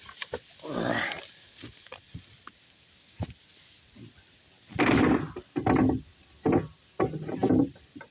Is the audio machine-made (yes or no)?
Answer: no